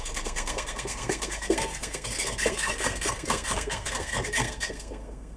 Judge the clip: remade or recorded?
remade